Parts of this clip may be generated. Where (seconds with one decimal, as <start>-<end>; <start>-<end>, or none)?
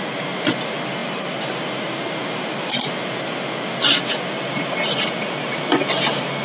1.0-1.6; 2.2-2.9